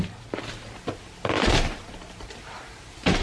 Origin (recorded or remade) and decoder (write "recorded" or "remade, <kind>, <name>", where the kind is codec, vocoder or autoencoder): recorded